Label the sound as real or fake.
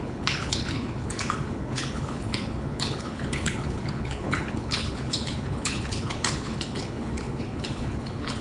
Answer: fake